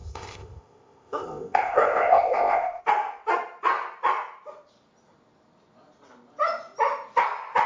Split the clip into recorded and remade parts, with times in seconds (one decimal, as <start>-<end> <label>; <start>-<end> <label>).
0.0-2.8 remade; 2.8-7.7 recorded